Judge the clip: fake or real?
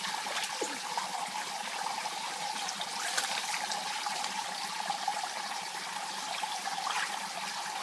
real